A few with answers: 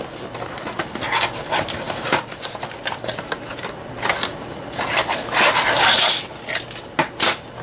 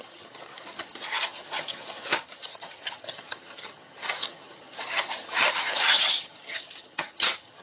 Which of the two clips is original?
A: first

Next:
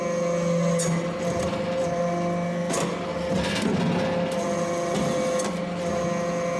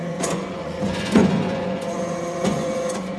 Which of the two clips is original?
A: first